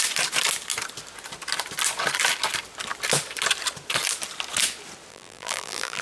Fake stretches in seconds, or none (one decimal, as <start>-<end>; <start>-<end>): 5.1-6.0